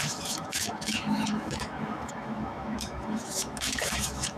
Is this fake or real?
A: fake